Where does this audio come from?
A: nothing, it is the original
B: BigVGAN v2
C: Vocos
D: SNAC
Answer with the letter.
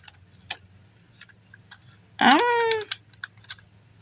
A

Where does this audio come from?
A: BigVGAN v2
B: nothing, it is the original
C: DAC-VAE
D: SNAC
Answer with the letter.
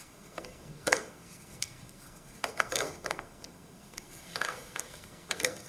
D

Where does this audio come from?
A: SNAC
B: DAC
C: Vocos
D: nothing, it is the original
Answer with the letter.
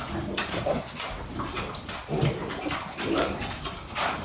D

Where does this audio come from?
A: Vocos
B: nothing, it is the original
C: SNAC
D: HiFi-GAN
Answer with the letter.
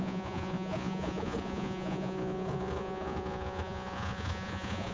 A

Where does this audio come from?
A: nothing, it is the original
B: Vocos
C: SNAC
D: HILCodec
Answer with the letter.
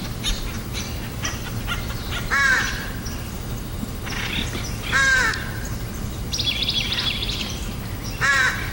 A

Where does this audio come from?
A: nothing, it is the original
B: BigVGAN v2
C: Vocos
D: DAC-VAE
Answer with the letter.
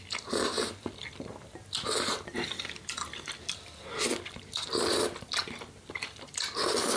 B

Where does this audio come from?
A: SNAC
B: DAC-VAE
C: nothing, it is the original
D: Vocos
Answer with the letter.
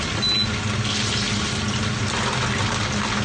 C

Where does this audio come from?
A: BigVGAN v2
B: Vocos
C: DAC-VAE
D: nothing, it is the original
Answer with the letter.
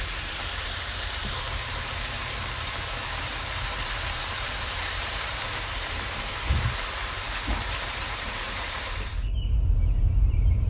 A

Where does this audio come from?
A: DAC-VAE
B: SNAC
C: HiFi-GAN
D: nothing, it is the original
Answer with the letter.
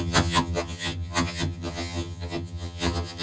C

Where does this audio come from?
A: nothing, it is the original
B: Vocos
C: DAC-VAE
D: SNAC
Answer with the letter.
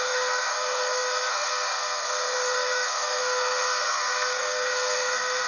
D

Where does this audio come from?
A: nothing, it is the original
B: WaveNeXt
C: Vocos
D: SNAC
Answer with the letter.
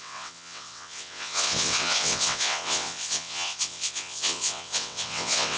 B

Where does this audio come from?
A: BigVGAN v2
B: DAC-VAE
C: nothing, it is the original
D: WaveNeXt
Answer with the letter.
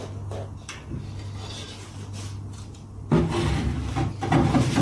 C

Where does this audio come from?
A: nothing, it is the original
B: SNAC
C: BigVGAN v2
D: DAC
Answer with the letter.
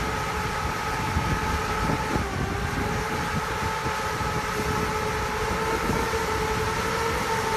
A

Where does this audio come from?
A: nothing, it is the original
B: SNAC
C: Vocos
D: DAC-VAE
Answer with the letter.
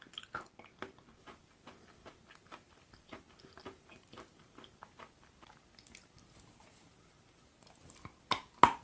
A